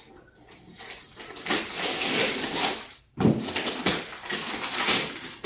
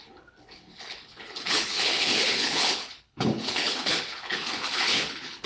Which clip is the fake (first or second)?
second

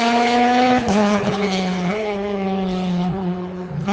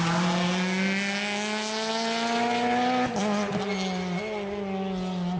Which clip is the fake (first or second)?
first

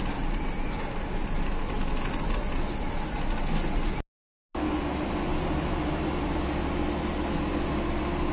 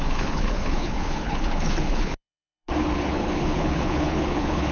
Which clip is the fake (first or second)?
second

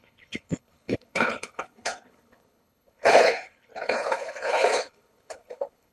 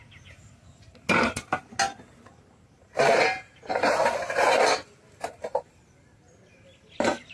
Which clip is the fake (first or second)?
first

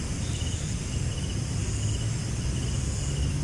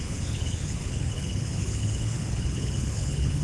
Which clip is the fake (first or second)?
second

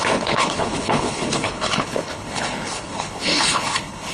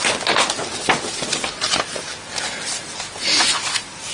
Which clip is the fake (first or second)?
first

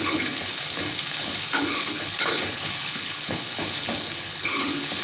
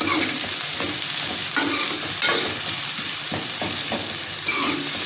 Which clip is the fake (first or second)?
first